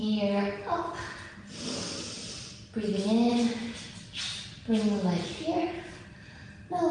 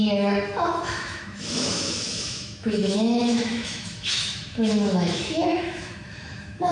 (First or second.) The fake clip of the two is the second